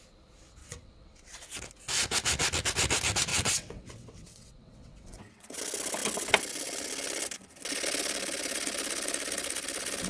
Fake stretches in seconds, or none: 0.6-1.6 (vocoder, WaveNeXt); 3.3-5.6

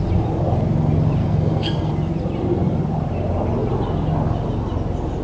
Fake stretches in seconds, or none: 1.2-1.9 (codec, SNAC)

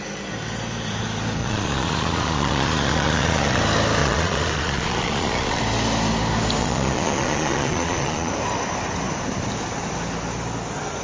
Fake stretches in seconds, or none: 1.4-3.6 (vocoder, Vocos); 4.0-5.6; 6.6-8.3

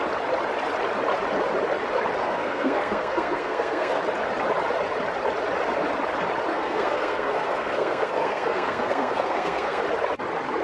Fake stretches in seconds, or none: 2.2-4.0 (codec, SNAC); 6.5-9.8

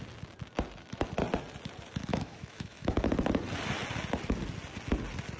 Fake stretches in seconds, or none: 2.1-3.1 (autoencoder, DAC-VAE)

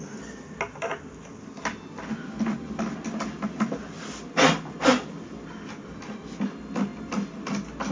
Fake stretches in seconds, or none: none

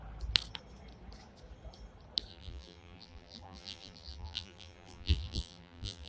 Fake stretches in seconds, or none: 2.3-6.1 (vocoder, BigVGAN v2)